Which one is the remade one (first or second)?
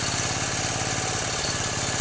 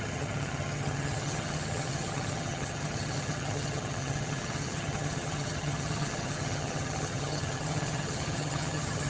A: second